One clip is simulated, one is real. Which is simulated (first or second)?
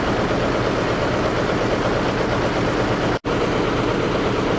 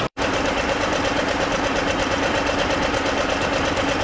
second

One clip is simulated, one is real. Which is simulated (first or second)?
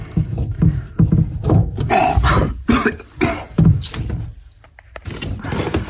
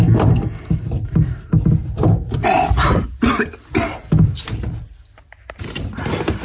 first